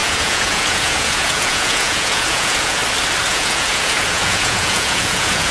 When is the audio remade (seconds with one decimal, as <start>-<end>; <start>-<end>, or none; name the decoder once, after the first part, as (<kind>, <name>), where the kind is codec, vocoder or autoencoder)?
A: 0.0-2.8 (vocoder, Vocos); 3.3-5.5